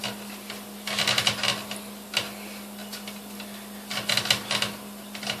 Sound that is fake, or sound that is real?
real